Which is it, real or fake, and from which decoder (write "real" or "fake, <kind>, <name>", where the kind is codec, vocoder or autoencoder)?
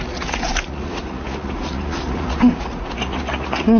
fake, vocoder, Vocos